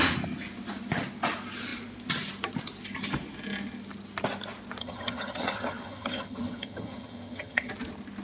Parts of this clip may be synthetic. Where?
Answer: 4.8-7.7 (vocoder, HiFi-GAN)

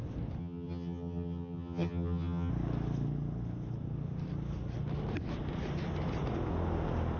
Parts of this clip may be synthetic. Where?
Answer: 0.4-2.5 (vocoder, HiFi-GAN)

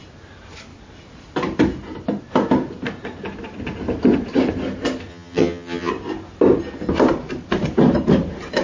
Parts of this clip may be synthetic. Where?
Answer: 5.1-5.9 (vocoder, HiFi-GAN)

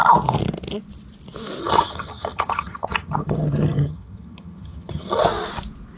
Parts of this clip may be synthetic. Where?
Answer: 1.6-5.2 (vocoder, HiFi-GAN)

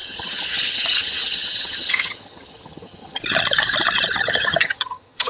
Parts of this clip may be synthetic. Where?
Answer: 0.0-3.2 (vocoder, HiFi-GAN); 4.2-5.3